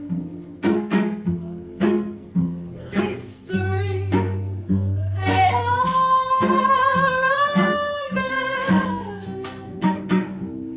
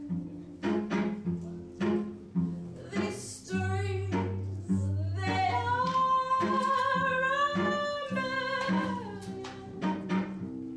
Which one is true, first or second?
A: second